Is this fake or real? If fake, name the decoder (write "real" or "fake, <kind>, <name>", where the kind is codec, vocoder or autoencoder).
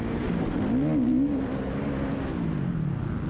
real